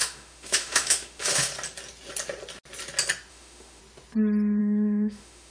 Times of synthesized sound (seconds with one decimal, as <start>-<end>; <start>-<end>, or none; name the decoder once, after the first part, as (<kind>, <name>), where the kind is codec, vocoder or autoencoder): 0.0-1.5 (autoencoder, DAC-VAE); 3.3-3.8; 4.6-5.5